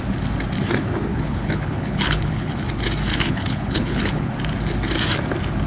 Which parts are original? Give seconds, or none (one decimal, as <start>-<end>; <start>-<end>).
0.0-1.1; 2.6-3.1; 4.3-5.7